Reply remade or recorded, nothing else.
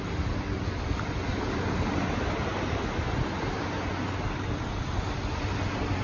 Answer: recorded